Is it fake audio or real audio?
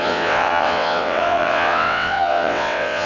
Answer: fake